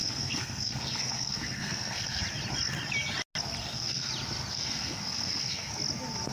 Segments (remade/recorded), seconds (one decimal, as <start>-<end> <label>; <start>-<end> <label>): 0.0-2.2 remade; 2.2-3.6 recorded; 3.6-4.1 remade; 4.1-4.5 recorded; 4.5-5.7 remade; 5.7-6.3 recorded